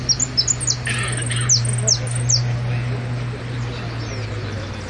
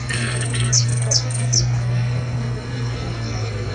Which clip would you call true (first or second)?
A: first